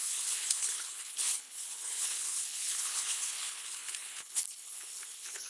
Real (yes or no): no